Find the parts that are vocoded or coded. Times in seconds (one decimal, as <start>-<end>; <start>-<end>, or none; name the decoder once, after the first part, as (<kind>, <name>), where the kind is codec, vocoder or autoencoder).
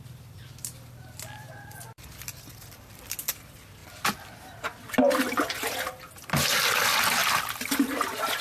0.0-3.8 (vocoder, BigVGAN v2); 6.8-8.4